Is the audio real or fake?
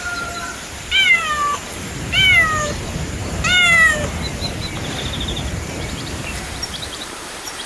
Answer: fake